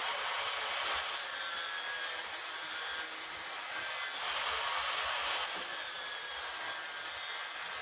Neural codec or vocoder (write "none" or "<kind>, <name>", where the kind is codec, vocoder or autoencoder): none